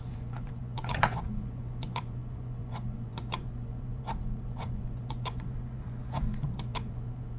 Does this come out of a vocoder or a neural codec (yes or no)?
yes